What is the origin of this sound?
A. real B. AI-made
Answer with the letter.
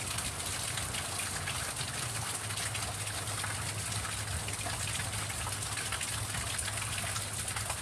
A